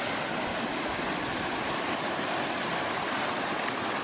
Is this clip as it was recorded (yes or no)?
yes